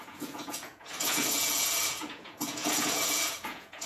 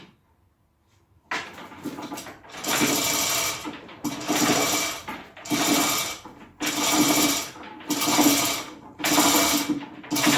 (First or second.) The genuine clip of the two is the second